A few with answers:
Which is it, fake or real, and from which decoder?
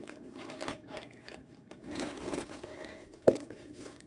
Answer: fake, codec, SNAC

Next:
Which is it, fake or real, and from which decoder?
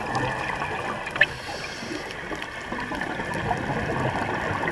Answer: real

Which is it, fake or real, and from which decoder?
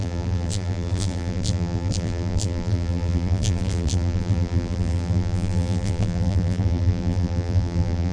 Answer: fake, vocoder, BigVGAN v2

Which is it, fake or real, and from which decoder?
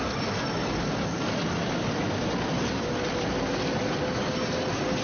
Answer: real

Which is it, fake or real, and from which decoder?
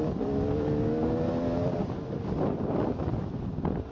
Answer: real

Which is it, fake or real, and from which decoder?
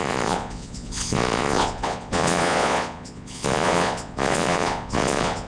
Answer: fake, vocoder, Vocos